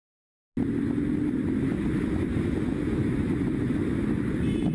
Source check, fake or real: real